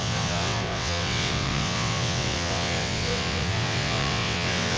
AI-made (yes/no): yes